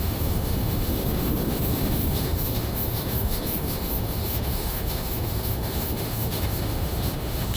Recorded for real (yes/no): no